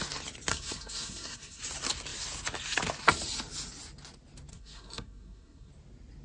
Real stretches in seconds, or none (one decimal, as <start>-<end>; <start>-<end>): 0.0-0.5; 1.6-4.5; 5.7-6.2